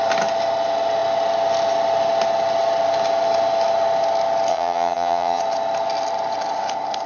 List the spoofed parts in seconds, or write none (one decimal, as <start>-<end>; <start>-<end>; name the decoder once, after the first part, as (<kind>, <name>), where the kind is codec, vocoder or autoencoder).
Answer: 4.5-5.4 (vocoder, HiFi-GAN)